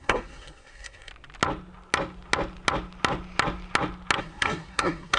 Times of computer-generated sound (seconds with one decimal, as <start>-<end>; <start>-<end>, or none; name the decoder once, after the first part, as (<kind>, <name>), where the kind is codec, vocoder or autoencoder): 0.0-1.1 (codec, SNAC); 4.2-5.2